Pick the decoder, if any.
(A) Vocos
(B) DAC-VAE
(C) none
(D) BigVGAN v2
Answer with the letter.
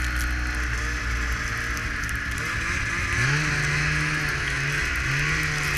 C